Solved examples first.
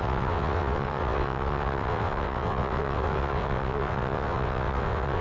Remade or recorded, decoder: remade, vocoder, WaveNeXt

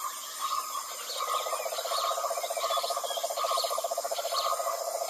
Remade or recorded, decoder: recorded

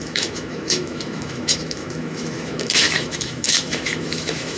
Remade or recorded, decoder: remade, autoencoder, DAC-VAE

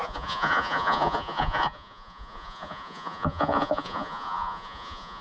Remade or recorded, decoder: remade, vocoder, Vocos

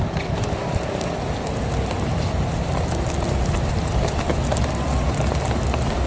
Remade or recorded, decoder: recorded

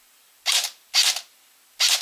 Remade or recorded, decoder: recorded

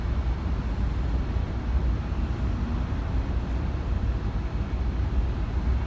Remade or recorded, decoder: recorded